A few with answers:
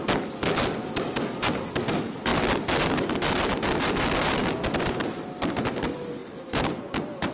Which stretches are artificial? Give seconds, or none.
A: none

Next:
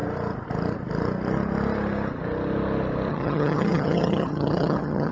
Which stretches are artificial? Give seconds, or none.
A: 3.1-5.1